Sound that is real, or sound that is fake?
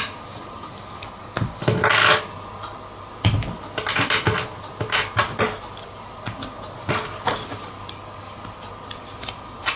real